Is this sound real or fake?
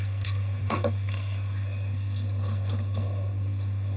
fake